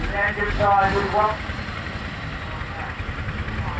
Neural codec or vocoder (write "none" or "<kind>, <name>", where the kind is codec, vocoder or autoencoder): none